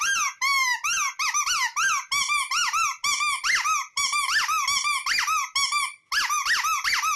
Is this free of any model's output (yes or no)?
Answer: yes